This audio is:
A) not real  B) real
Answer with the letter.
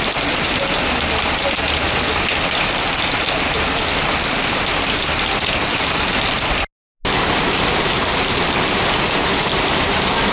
B